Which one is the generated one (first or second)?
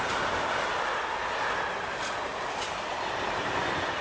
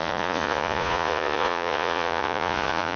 second